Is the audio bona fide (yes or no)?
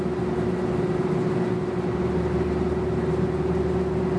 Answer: yes